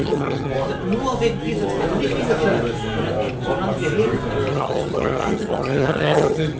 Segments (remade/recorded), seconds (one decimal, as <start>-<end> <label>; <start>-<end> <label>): 0.0-0.5 remade; 0.5-4.5 recorded; 4.5-6.6 remade